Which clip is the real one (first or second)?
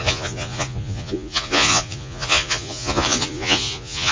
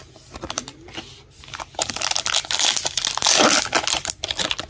second